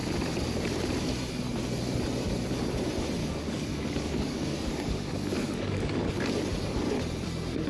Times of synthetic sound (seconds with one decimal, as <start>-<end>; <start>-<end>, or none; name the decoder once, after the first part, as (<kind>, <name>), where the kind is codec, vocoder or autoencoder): 3.2-6.1 (codec, DAC)